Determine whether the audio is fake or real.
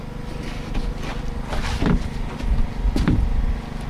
real